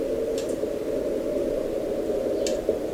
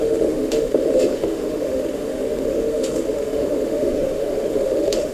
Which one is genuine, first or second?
first